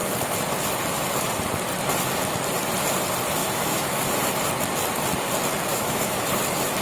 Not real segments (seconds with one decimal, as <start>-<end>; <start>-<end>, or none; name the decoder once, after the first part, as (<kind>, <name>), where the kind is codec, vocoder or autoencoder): 3.4-4.0 (autoencoder, DAC-VAE); 5.7-6.3